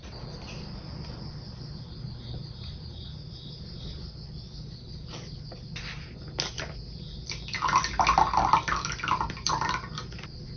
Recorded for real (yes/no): yes